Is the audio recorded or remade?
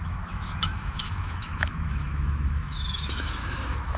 remade